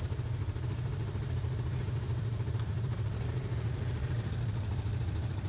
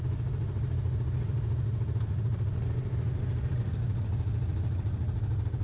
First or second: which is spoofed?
first